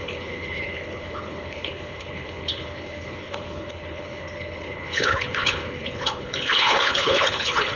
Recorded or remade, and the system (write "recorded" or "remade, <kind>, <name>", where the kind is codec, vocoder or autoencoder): remade, codec, HILCodec